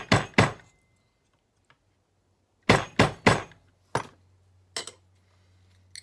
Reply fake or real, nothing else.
real